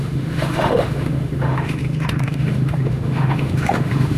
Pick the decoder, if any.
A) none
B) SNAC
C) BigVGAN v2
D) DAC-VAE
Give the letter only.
D